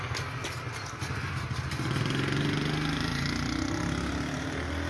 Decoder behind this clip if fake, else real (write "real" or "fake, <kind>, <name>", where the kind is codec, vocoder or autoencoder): real